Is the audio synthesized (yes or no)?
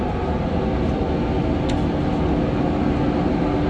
no